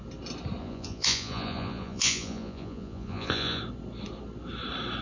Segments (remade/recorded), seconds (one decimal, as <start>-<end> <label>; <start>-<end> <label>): 0.0-0.6 recorded; 0.6-3.6 remade; 3.6-5.0 recorded